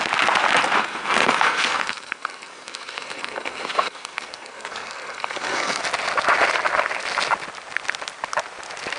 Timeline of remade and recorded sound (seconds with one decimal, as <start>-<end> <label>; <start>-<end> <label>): 0.0-0.8 recorded; 0.8-5.8 remade; 5.8-9.0 recorded